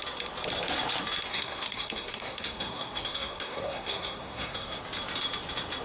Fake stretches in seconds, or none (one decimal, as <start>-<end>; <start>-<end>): 1.3-4.8